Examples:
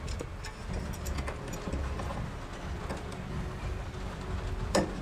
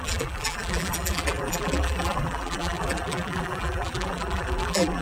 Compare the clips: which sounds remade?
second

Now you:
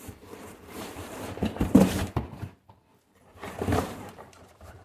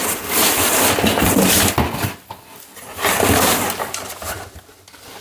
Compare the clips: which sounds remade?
first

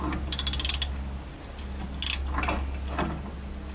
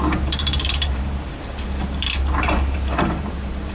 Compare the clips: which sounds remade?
second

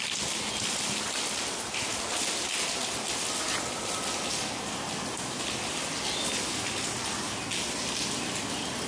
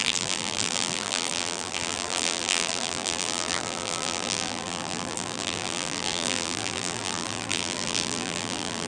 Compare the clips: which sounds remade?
second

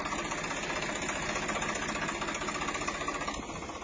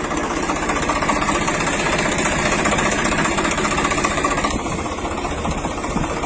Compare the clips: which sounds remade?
second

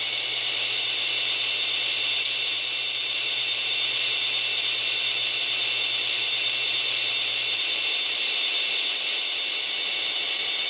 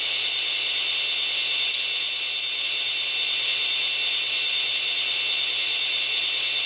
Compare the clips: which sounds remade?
first